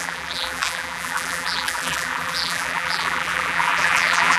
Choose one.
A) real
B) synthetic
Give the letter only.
B